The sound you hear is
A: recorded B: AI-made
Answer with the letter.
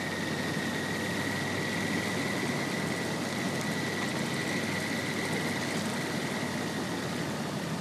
A